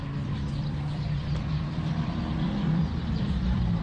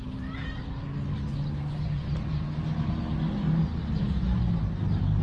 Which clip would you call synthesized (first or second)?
first